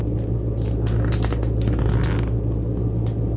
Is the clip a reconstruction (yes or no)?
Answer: no